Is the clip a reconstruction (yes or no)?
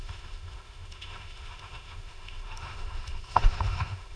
yes